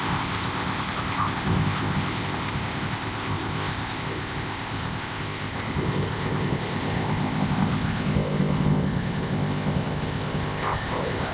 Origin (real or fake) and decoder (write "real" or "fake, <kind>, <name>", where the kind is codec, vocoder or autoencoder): fake, codec, ZipCodec